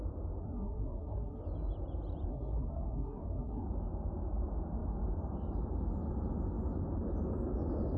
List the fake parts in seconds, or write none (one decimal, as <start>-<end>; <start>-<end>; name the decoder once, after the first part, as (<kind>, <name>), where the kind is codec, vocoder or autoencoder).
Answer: 0.4-1.4 (codec, SNAC); 2.3-3.7